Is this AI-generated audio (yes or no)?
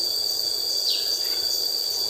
no